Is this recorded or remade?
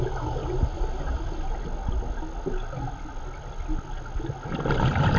recorded